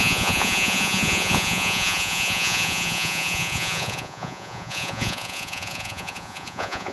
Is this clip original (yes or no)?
no